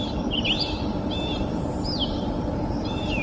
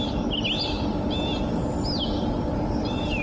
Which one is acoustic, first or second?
second